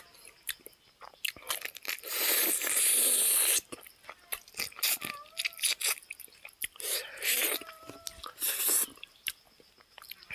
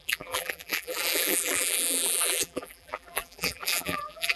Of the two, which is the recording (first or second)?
first